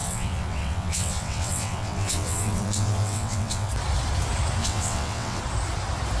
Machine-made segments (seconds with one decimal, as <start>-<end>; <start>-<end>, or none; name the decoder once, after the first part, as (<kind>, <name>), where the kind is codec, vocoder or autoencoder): 0.0-3.7 (vocoder, WaveNeXt); 4.6-5.4